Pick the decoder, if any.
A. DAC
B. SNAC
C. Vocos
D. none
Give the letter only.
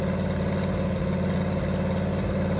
D